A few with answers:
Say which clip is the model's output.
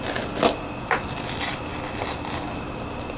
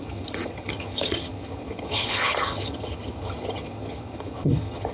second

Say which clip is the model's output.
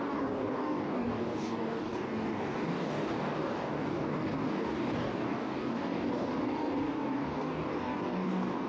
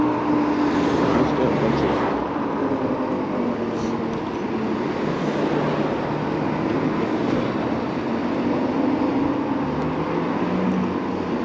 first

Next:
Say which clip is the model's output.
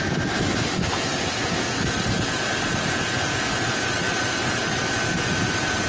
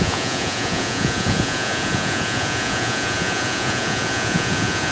second